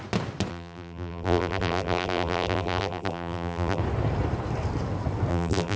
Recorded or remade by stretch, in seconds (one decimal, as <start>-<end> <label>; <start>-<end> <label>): 0.0-0.5 recorded; 0.5-3.8 remade; 3.8-5.3 recorded; 5.3-5.8 remade